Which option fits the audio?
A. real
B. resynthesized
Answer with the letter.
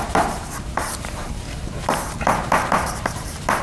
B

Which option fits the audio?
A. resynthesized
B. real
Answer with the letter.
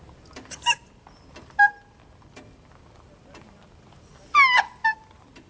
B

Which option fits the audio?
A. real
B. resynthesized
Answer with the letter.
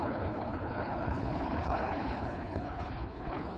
B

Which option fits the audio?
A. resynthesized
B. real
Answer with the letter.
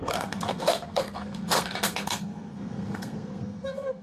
A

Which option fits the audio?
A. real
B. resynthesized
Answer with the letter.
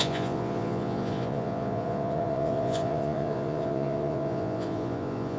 B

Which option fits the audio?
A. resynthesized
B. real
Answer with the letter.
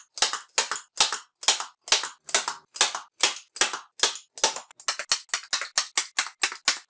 B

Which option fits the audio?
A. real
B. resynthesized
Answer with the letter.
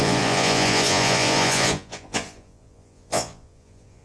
B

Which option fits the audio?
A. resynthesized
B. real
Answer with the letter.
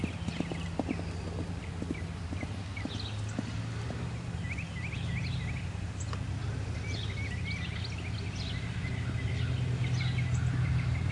B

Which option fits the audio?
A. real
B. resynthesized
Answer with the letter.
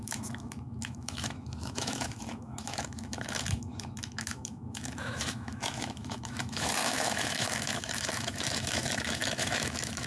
B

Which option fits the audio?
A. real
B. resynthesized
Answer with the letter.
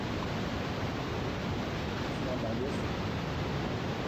A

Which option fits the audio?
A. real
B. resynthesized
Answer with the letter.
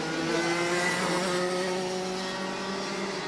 A